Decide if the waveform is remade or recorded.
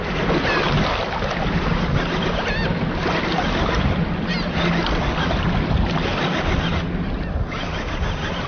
recorded